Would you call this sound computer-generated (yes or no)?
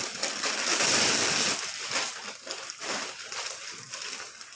no